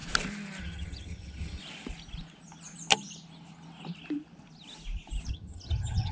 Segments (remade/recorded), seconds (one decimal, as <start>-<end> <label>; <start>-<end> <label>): 0.0-0.6 recorded; 0.6-1.6 remade; 1.6-5.3 recorded; 5.3-6.1 remade